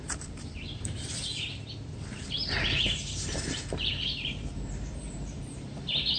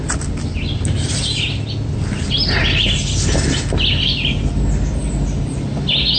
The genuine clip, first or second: second